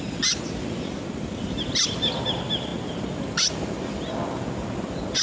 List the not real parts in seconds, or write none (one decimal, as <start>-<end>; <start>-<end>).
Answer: none